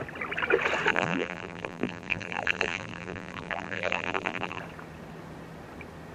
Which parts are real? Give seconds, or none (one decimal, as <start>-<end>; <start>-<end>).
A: 0.0-0.9; 4.6-6.1